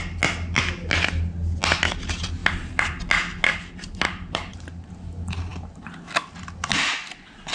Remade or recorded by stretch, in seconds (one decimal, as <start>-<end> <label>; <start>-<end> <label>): 0.0-2.4 recorded; 2.4-3.0 remade; 3.0-3.5 recorded; 3.5-4.9 remade; 4.9-7.5 recorded